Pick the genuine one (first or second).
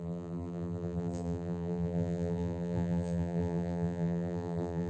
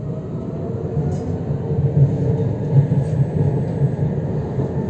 second